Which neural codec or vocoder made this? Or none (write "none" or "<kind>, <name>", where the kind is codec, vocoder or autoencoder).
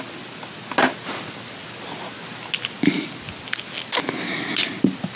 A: none